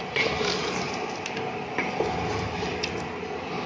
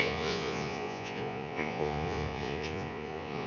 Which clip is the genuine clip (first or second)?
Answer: first